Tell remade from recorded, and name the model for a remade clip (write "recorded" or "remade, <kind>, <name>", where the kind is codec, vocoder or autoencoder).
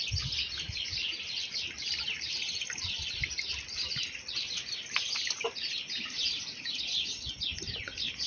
recorded